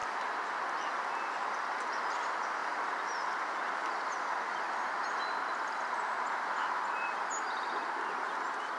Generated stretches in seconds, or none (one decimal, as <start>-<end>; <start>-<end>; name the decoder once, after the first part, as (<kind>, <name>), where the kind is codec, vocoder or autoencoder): none